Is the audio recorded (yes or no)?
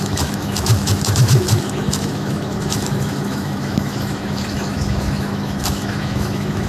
no